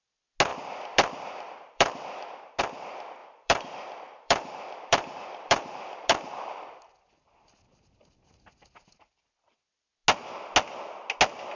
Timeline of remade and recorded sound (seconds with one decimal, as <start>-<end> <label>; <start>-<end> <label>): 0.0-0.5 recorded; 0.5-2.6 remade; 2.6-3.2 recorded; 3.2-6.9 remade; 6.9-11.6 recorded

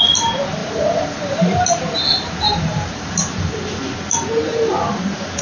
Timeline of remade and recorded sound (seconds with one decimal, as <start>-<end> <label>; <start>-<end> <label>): 0.0-0.6 recorded; 0.6-3.8 remade; 3.8-5.4 recorded

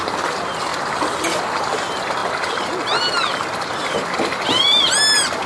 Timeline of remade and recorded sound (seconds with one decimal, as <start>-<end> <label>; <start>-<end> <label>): 0.0-5.5 recorded

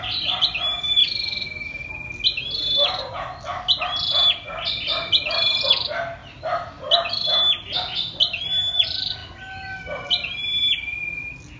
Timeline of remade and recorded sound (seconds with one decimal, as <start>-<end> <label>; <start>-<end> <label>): 0.0-6.2 recorded; 6.2-7.1 remade; 7.1-11.6 recorded

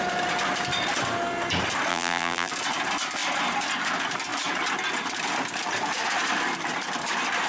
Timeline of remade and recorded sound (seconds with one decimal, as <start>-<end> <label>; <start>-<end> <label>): 0.0-1.9 recorded; 1.9-2.5 remade; 2.5-7.5 recorded

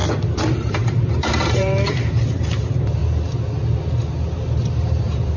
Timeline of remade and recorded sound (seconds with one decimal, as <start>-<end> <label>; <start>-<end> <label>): 0.0-0.7 recorded; 0.7-3.0 remade; 3.0-4.7 recorded; 4.7-5.4 remade